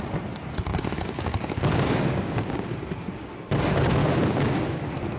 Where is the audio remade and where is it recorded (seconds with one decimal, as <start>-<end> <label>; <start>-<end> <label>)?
0.0-0.7 recorded; 0.7-3.3 remade; 3.3-4.0 recorded; 4.0-5.2 remade